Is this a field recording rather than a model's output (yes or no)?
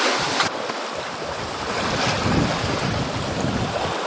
yes